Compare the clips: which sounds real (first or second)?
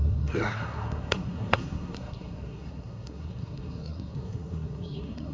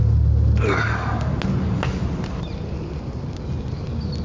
second